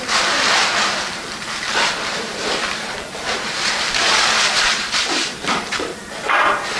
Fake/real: fake